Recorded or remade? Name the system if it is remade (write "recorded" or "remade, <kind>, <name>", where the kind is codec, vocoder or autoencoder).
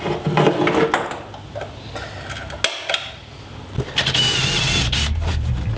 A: recorded